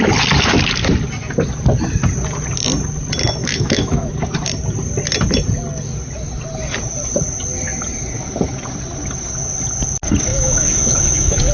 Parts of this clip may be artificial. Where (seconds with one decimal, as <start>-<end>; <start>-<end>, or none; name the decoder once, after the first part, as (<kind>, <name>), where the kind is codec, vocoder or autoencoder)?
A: 3.4-4.1 (autoencoder, DAC-VAE); 10.3-11.5

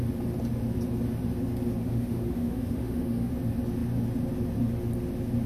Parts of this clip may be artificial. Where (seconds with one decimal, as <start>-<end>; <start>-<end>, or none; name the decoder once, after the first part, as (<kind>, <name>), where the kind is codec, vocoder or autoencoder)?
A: 1.8-3.3 (autoencoder, DAC-VAE)

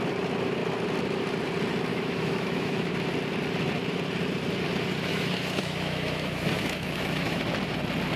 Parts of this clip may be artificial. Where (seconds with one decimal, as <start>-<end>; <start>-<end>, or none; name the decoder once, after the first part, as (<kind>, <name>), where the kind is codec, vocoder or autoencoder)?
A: 1.9-2.9 (autoencoder, DAC-VAE); 5.1-7.4